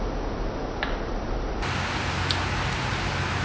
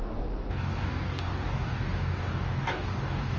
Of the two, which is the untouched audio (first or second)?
first